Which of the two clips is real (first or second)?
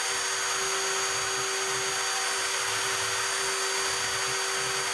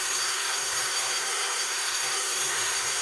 first